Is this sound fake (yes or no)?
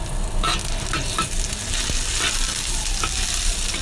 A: no